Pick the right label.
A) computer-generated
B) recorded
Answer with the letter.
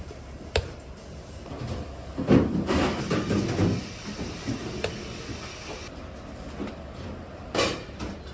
B